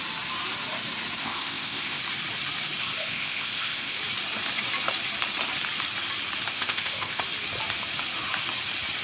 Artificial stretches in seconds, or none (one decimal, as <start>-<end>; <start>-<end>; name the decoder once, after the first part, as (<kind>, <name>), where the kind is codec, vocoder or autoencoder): 1.2-2.0 (codec, ZipCodec); 2.8-4.0; 6.5-7.2